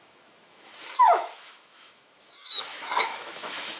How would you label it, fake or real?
fake